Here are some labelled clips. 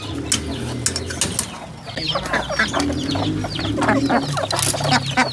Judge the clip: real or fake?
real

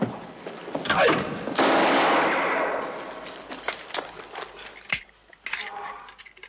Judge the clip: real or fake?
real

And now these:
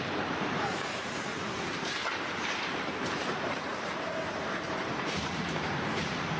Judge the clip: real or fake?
fake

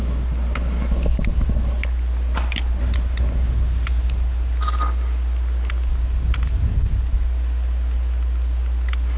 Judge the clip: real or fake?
real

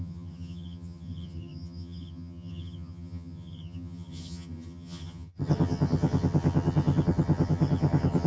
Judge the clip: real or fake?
fake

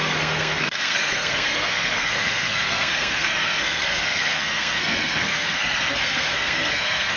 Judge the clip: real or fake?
fake